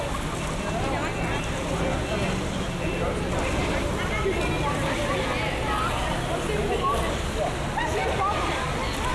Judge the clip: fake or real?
real